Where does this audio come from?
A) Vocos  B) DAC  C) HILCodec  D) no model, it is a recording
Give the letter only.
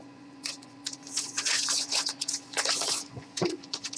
A